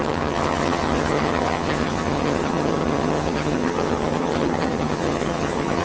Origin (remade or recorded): remade